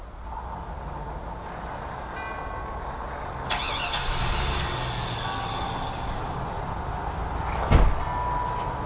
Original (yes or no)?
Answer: yes